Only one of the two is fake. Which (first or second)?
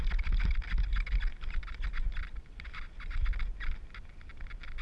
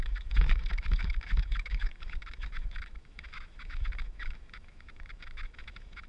second